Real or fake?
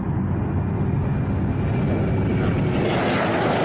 real